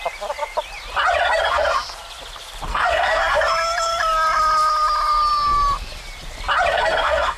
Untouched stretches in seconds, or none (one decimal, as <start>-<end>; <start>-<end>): 0.0-2.7; 3.4-6.7